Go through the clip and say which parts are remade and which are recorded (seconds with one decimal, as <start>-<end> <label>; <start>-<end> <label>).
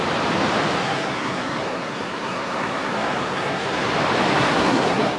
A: 0.0-0.8 recorded; 0.8-3.9 remade; 3.9-4.3 recorded; 4.3-5.2 remade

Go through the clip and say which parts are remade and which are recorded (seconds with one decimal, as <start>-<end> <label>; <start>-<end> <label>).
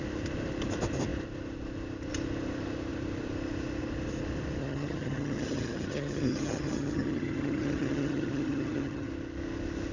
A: 0.0-4.6 recorded; 4.6-9.1 remade; 9.1-9.9 recorded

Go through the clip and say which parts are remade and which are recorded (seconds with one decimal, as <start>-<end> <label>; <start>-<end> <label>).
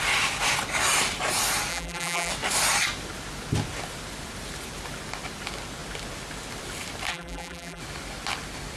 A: 0.0-1.7 recorded; 1.7-2.3 remade; 2.3-7.1 recorded; 7.1-7.8 remade; 7.8-8.8 recorded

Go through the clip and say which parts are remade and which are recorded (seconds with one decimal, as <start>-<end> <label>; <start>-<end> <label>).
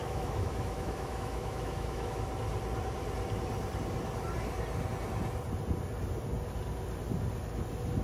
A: 0.0-2.3 remade; 2.3-8.0 recorded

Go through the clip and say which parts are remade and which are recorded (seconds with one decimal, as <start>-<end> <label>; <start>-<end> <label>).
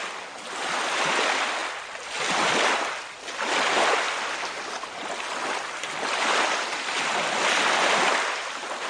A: 0.0-8.9 recorded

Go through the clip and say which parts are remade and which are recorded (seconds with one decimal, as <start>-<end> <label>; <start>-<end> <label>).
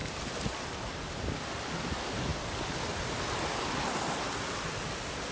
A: 0.0-5.3 recorded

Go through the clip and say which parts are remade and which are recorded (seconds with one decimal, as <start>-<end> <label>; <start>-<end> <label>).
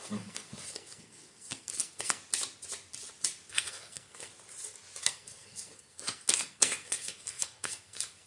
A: 0.0-2.2 remade; 2.2-3.5 recorded; 3.5-4.3 remade; 4.3-5.0 recorded; 5.0-8.3 remade